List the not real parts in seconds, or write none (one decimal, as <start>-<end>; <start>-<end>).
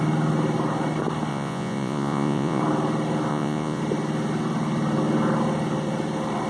1.3-2.6; 3.3-3.8